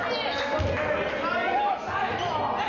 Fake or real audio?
real